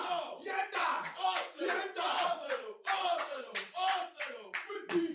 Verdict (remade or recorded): remade